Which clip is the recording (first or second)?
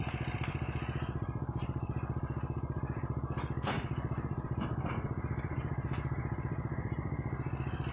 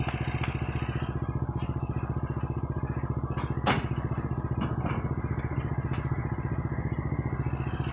second